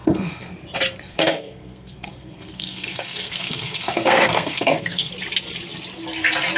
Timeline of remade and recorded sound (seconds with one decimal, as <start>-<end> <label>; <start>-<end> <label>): 0.0-0.5 remade; 0.5-1.1 recorded; 1.1-5.1 remade; 5.1-6.6 recorded